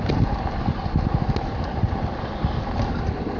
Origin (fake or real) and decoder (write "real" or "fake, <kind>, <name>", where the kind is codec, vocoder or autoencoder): real